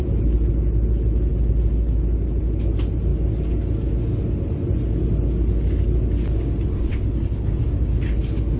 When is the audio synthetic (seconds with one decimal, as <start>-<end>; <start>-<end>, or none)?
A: 6.9-7.6

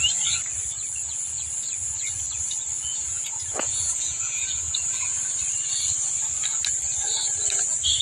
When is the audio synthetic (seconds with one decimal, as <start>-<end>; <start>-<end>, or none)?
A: 2.9-5.2

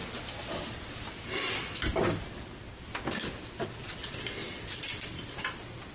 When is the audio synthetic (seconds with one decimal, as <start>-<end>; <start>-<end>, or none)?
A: none